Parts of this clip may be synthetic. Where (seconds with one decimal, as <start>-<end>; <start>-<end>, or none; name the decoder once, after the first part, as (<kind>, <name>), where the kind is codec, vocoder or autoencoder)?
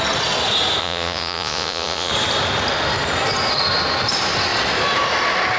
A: 0.8-2.1 (vocoder, Vocos)